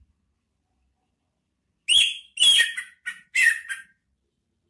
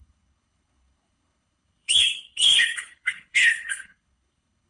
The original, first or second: first